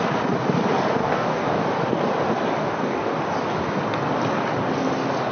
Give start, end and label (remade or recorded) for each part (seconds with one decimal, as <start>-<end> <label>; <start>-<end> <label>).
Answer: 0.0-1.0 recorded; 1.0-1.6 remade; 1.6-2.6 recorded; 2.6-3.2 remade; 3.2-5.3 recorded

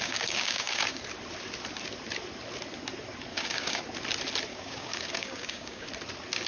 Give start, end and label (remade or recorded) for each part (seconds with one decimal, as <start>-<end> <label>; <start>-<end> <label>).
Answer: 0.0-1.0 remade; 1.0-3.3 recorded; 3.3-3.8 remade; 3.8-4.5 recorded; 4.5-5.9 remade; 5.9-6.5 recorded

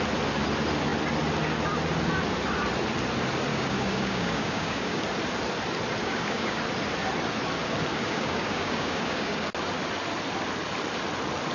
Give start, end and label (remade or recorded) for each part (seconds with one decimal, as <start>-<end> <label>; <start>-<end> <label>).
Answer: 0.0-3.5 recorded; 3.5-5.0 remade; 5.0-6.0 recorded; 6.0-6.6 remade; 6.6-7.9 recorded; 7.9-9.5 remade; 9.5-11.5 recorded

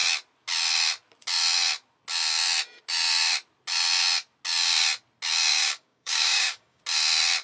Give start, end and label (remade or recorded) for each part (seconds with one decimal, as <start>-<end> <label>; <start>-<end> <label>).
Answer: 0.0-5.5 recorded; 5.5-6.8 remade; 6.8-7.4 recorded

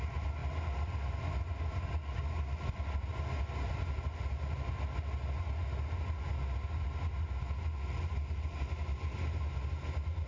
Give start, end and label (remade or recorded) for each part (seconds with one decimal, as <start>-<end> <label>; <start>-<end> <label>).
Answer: 0.0-10.3 recorded